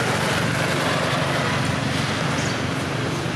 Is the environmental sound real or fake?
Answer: real